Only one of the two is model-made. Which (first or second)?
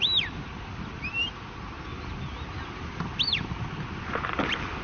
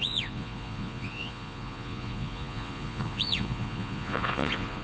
second